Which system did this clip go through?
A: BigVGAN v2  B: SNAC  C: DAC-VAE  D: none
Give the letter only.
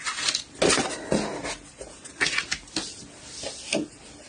D